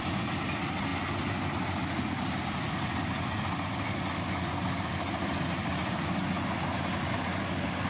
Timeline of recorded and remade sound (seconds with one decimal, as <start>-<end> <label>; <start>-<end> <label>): 0.0-7.9 recorded